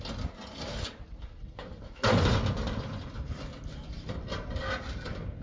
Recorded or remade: recorded